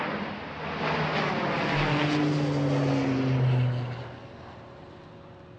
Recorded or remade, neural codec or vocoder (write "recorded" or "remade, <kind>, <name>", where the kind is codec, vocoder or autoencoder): recorded